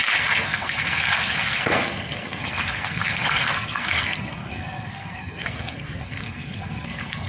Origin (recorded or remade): remade